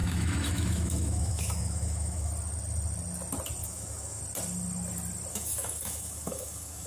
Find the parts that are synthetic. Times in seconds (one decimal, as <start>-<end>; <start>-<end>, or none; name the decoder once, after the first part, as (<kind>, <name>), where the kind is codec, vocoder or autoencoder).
0.0-2.3 (autoencoder, DAC-VAE); 3.6-4.2; 5.3-6.9

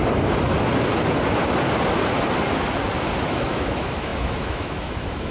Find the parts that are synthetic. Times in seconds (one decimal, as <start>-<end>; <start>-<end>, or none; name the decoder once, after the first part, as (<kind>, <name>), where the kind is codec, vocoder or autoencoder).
3.2-5.3 (autoencoder, DAC-VAE)